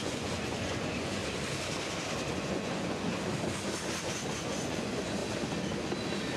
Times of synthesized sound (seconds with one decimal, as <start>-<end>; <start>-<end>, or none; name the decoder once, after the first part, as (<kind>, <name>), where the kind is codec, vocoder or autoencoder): 0.0-1.2 (vocoder, Vocos); 2.3-3.1; 4.0-5.2